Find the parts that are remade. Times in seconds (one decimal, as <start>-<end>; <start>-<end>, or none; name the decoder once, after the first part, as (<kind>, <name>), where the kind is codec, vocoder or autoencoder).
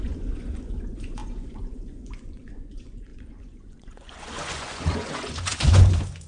0.0-6.3 (vocoder, Vocos)